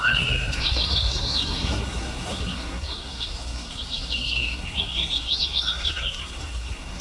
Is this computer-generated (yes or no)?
yes